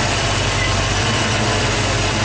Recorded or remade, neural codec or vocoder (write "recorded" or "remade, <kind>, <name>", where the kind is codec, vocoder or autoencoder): recorded